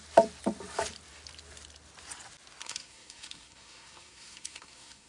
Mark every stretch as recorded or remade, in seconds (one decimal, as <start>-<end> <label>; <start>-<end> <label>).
0.0-2.6 recorded; 2.6-5.1 remade